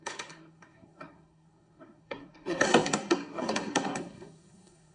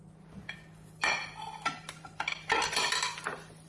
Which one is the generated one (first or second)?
first